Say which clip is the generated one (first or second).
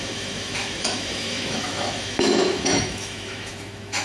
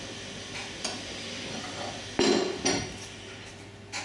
first